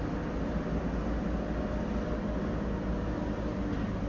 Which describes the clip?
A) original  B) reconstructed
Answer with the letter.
A